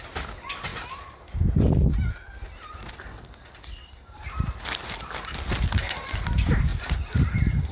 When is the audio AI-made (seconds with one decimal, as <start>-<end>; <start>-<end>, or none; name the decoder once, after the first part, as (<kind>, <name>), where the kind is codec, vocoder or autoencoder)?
none